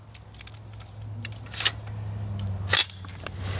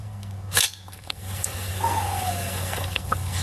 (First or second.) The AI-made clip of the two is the second